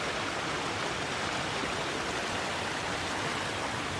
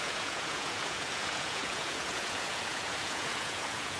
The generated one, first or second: second